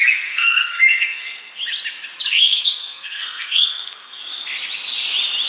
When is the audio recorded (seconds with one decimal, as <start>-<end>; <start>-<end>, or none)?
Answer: 1.6-2.3; 4.2-5.5